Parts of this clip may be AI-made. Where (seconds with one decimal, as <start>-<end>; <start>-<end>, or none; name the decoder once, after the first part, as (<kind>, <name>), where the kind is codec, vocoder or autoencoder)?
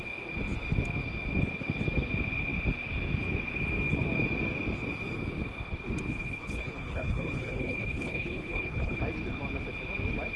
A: 6.2-9.0 (codec, HILCodec)